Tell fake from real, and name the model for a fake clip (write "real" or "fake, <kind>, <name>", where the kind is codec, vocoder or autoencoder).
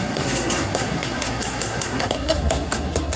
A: fake, codec, SNAC